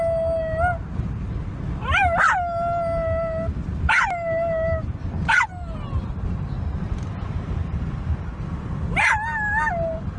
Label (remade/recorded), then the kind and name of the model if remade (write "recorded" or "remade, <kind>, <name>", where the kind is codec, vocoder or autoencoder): recorded